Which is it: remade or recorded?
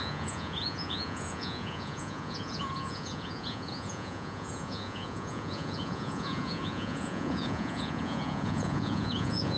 remade